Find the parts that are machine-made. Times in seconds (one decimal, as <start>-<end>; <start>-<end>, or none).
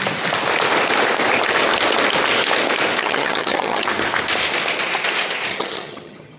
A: 3.0-3.9; 5.5-6.4